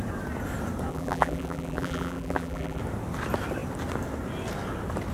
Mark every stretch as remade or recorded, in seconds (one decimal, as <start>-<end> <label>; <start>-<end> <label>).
0.0-0.9 recorded; 0.9-2.8 remade; 2.8-5.1 recorded